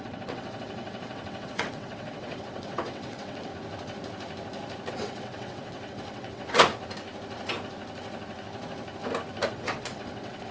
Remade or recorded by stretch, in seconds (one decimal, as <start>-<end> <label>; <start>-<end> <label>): 0.0-3.5 remade; 3.5-4.9 recorded; 4.9-6.7 remade; 6.7-9.5 recorded; 9.5-10.5 remade